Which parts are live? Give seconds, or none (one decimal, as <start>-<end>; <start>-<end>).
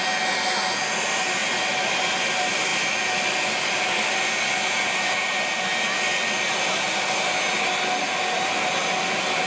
0.0-9.5